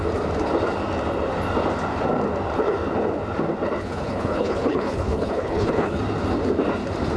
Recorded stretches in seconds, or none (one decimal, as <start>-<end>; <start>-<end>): 0.0-3.8; 6.0-7.2